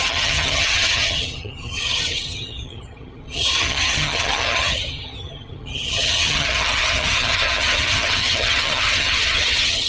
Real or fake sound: fake